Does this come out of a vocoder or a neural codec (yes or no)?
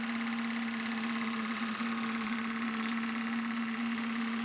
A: no